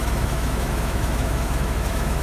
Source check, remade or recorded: remade